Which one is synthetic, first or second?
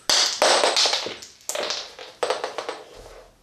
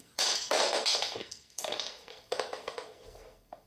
second